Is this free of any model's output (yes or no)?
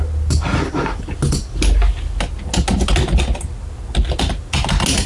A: yes